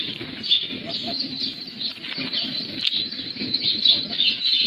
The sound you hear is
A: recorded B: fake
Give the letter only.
A